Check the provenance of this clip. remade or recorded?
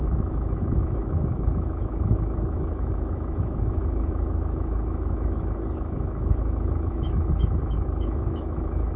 remade